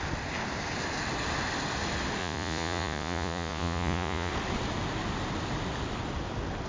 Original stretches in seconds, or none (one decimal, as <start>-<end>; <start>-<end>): 0.0-2.2; 4.3-6.7